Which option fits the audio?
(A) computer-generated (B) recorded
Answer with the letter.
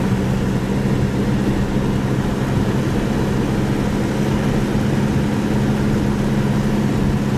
B